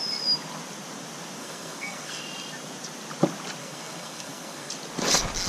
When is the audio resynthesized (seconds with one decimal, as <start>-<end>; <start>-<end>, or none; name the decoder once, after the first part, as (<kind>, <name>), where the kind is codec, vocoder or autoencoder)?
1.4-2.2 (codec, SNAC); 3.6-4.7